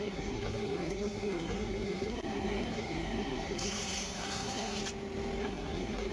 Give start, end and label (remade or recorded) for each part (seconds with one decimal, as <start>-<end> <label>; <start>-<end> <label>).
0.0-4.8 remade; 4.8-5.4 recorded; 5.4-6.1 remade